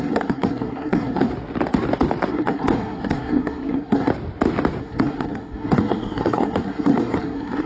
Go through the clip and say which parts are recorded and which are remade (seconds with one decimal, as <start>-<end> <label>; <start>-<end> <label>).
0.0-1.3 remade; 1.3-2.3 recorded; 2.3-4.1 remade; 4.1-4.8 recorded; 4.8-7.7 remade